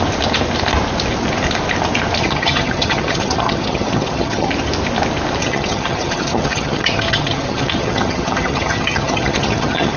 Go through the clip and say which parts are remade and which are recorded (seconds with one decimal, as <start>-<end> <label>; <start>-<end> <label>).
0.0-2.2 recorded; 2.2-4.5 remade; 4.5-5.4 recorded; 5.4-10.0 remade